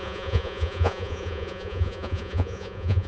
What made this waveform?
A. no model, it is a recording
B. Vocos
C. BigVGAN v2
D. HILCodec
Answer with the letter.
B